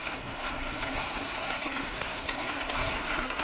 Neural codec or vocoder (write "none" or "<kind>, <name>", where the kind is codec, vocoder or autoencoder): codec, SNAC